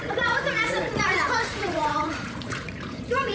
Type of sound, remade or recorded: remade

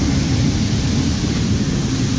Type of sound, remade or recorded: recorded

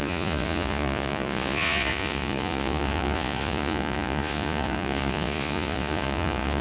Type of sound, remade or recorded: remade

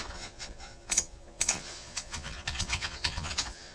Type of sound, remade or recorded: remade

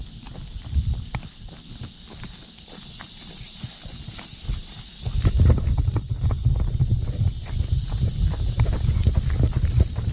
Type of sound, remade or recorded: recorded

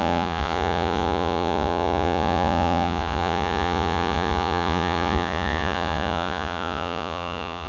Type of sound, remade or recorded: remade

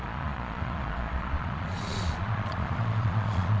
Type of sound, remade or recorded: remade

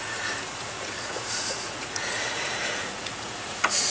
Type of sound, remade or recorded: remade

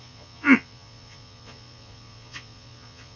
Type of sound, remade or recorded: remade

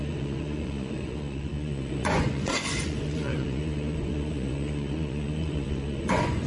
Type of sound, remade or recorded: remade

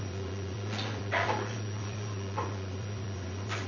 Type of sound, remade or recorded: remade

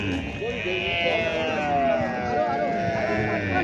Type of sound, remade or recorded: recorded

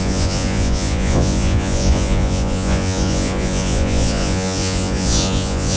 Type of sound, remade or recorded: remade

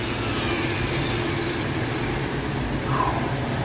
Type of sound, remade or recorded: recorded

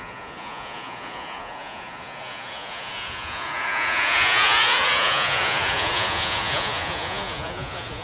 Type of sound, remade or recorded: remade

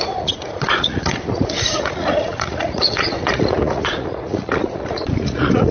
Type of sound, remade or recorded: remade